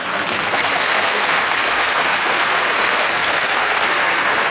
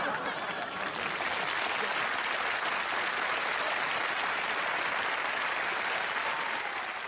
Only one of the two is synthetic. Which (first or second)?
first